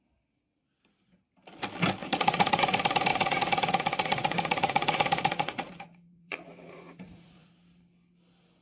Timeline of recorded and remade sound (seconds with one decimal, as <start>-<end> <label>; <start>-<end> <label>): 0.0-2.0 recorded; 2.0-2.6 remade; 2.6-3.1 recorded; 3.1-7.5 remade; 7.5-8.6 recorded